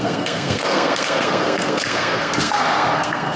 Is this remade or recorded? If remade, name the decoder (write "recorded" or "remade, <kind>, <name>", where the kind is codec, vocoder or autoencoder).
remade, codec, SNAC